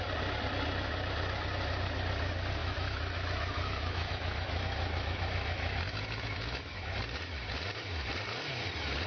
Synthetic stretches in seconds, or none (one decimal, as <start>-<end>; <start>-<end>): 2.6-7.0